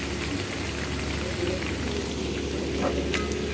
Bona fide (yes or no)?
yes